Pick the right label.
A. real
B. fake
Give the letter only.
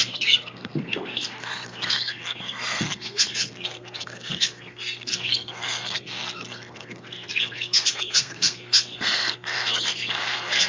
B